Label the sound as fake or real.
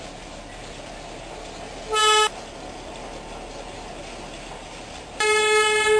real